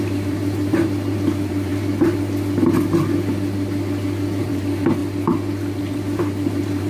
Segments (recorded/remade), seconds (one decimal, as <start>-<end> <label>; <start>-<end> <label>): 0.0-1.7 remade; 1.7-4.4 recorded; 4.4-5.0 remade; 5.0-5.8 recorded; 5.8-6.9 remade